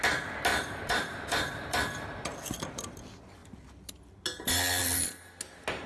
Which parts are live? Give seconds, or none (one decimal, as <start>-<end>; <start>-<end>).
0.0-0.5; 2.0-5.9